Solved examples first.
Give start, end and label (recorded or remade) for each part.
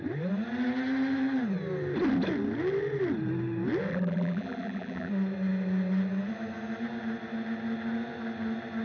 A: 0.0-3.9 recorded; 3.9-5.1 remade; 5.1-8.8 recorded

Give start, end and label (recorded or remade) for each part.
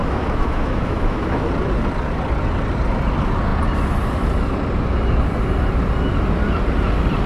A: 0.0-1.5 remade; 1.5-7.3 recorded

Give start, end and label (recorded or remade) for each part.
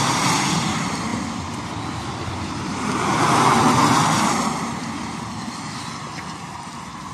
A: 0.0-7.1 recorded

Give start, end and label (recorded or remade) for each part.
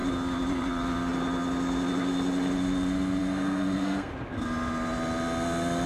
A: 0.0-3.2 recorded; 3.2-4.1 remade; 4.1-5.9 recorded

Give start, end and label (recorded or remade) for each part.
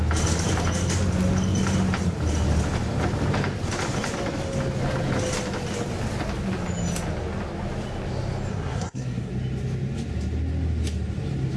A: 0.0-8.5 recorded; 8.5-9.3 remade; 9.3-11.6 recorded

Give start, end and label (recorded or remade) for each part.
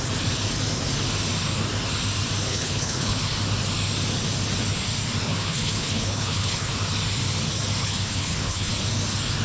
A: 0.0-2.5 recorded; 2.5-3.2 remade; 3.2-5.2 recorded; 5.2-6.7 remade; 6.7-7.8 recorded; 7.8-8.7 remade; 8.7-9.4 recorded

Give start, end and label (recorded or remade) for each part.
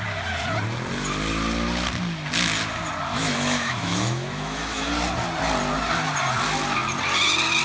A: 0.0-3.1 recorded; 3.1-4.9 remade; 4.9-7.6 recorded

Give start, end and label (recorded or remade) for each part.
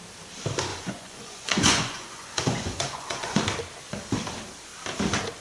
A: 0.0-0.7 recorded; 0.7-3.4 remade; 3.4-5.4 recorded